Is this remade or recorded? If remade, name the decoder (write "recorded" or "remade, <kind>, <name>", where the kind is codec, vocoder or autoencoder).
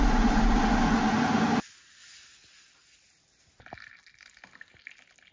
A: recorded